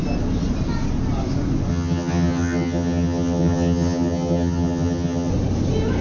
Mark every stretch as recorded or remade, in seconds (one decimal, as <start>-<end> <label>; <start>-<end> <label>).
0.0-1.7 recorded; 1.7-5.3 remade; 5.3-6.0 recorded